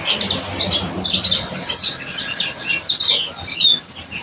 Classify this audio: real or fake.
real